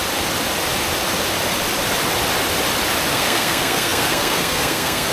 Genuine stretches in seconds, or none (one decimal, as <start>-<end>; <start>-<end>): 0.0-3.1